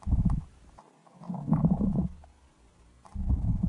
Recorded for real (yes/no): yes